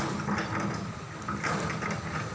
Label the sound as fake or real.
real